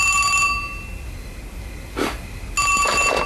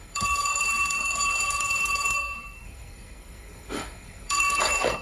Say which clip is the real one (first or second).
first